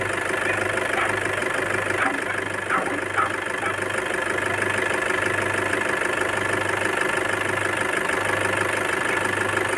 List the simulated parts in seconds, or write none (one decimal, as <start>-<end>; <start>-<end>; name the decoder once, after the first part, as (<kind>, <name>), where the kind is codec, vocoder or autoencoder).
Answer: none